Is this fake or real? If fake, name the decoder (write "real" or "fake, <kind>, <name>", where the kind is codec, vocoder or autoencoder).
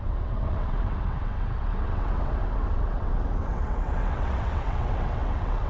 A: fake, vocoder, WaveNeXt